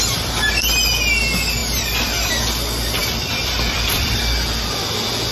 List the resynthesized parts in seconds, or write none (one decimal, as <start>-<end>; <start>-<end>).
1.6-2.3; 3.0-4.2